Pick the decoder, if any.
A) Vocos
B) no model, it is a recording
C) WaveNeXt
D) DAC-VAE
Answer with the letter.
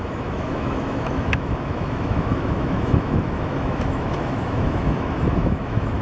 D